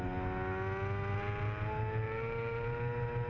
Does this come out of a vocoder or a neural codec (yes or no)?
no